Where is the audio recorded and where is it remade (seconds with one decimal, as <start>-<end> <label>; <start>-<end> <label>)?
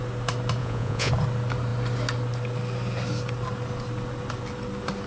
0.0-0.6 recorded; 0.6-1.1 remade; 1.1-5.1 recorded